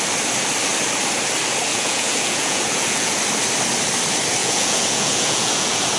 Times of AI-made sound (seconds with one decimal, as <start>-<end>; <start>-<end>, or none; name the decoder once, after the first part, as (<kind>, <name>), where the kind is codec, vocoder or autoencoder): 1.7-3.2 (vocoder, Vocos); 4.4-6.0